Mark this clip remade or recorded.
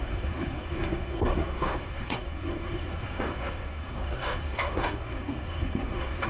remade